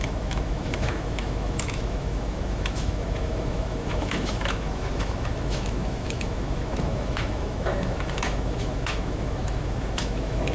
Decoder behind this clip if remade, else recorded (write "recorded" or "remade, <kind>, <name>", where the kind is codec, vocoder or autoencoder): remade, autoencoder, DAC-VAE